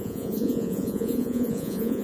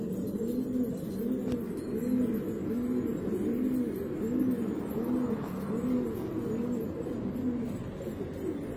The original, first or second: second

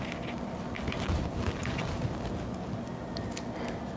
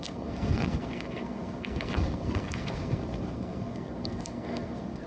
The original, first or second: first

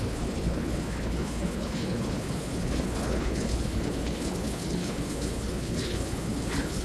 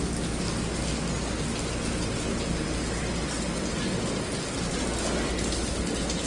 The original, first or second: second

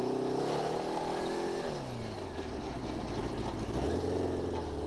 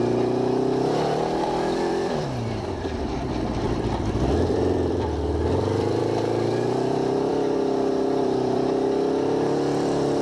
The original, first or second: first